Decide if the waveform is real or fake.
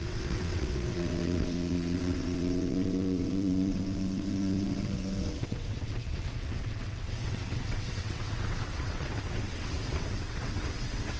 fake